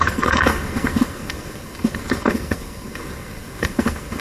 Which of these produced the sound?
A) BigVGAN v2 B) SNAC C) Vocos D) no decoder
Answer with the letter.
B